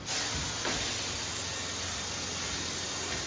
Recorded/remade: recorded